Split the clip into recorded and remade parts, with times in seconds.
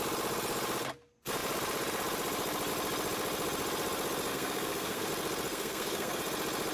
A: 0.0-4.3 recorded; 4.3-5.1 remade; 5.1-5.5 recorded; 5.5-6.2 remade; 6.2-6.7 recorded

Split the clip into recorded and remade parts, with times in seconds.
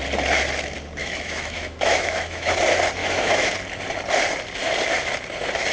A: 0.0-1.0 recorded; 1.0-2.5 remade; 2.5-3.0 recorded; 3.0-3.5 remade; 3.5-5.7 recorded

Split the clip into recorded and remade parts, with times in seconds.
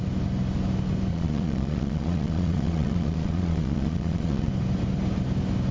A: 0.0-1.1 recorded; 1.1-4.5 remade; 4.5-5.7 recorded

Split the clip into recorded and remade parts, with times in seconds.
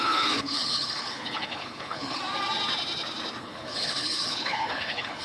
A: 0.0-2.2 remade; 2.2-3.4 recorded; 3.4-5.2 remade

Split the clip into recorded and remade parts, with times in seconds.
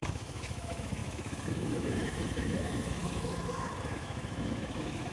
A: 0.0-5.1 remade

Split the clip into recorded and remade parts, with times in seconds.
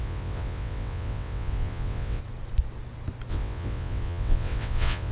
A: 0.0-2.2 remade; 2.2-3.3 recorded; 3.3-5.1 remade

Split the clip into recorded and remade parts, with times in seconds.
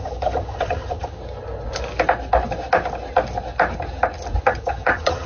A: 0.0-1.2 remade; 1.2-4.4 recorded; 4.4-5.3 remade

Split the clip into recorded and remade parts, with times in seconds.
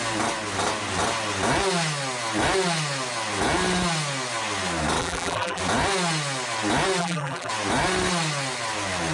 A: 0.0-5.0 recorded; 5.0-5.6 remade; 5.6-7.0 recorded; 7.0-7.5 remade; 7.5-9.1 recorded